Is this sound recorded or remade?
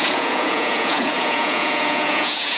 remade